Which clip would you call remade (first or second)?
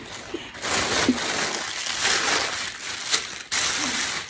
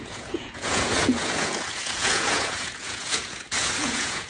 second